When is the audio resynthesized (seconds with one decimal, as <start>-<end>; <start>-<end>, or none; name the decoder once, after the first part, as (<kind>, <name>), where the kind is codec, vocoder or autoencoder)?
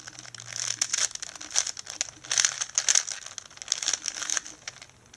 none